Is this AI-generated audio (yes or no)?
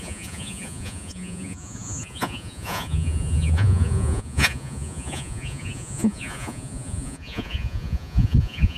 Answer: yes